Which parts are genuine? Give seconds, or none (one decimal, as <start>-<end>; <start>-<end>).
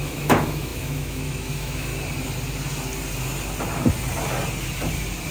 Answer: 1.9-5.3